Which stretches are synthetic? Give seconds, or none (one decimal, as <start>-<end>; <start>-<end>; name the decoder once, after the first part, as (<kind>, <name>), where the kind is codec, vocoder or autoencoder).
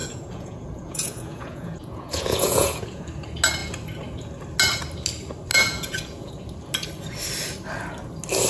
0.0-3.0 (vocoder, Vocos); 5.5-6.3